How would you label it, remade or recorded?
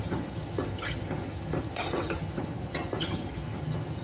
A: remade